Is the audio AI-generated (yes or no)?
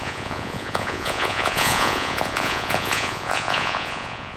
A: yes